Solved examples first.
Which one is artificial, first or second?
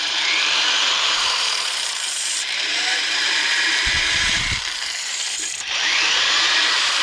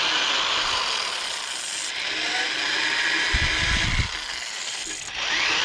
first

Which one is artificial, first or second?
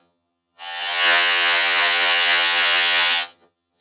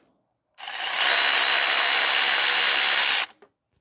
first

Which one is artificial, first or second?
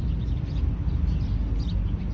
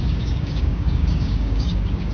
second